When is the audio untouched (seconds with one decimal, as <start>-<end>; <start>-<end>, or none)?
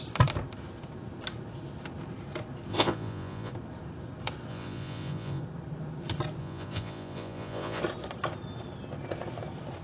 0.0-2.7; 3.5-4.5; 5.4-6.4; 7.8-9.8